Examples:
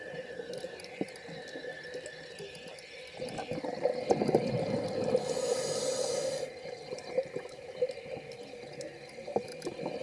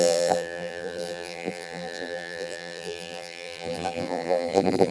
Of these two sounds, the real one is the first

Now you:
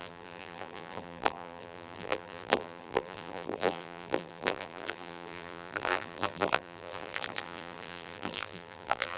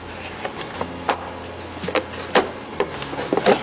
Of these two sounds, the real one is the second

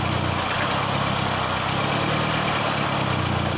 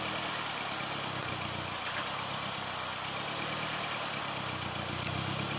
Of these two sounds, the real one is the first